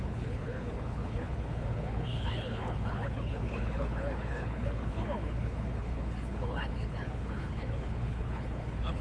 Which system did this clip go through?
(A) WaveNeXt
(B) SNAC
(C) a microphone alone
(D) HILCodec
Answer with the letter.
D